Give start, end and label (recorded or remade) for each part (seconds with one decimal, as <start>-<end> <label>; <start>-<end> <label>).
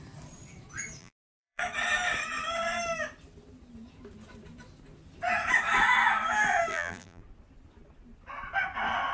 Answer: 0.0-1.0 recorded; 1.0-1.6 remade; 1.6-6.7 recorded; 6.7-7.2 remade; 7.2-9.1 recorded